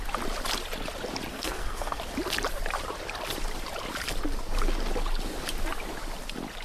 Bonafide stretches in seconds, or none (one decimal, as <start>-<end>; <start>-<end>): 0.0-1.3; 2.0-6.6